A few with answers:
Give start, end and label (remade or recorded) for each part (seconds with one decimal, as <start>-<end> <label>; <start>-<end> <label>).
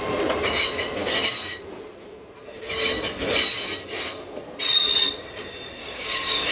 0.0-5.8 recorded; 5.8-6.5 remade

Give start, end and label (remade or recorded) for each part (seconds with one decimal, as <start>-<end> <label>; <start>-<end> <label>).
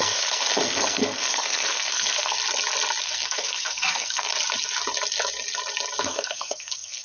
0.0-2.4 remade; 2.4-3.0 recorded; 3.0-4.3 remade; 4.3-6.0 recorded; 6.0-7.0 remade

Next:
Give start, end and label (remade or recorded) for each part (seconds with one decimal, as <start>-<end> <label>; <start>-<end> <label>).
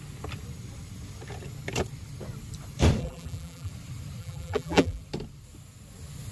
0.0-3.0 recorded; 3.0-3.7 remade; 3.7-4.2 recorded; 4.2-5.0 remade; 5.0-6.3 recorded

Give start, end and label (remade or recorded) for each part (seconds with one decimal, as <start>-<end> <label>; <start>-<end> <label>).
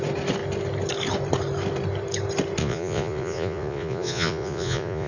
0.0-2.6 recorded; 2.6-5.1 remade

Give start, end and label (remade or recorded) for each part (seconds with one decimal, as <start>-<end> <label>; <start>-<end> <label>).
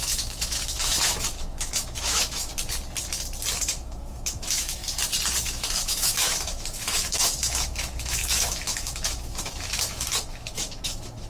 0.0-2.5 remade; 2.5-3.6 recorded; 3.6-4.8 remade; 4.8-5.4 recorded; 5.4-11.3 remade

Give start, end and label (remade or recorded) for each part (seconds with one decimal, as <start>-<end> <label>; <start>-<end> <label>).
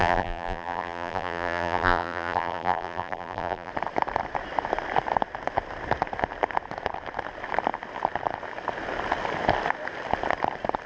0.0-3.7 remade; 3.7-10.9 recorded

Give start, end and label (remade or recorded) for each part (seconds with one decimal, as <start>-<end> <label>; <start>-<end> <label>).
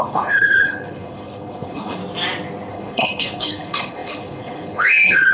0.0-2.0 remade; 2.0-2.7 recorded; 2.7-5.3 remade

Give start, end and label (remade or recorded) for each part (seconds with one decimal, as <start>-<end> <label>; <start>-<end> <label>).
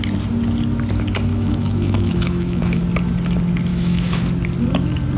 0.0-1.3 recorded; 1.3-2.8 remade; 2.8-3.7 recorded; 3.7-4.2 remade; 4.2-5.2 recorded